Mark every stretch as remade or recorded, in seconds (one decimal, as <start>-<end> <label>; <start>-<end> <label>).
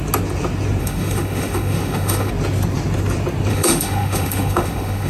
0.0-0.8 recorded; 0.8-2.3 remade; 2.3-3.5 recorded; 3.5-5.1 remade